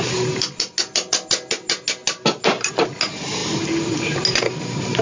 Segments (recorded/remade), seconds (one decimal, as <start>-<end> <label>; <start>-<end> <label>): 0.0-5.0 recorded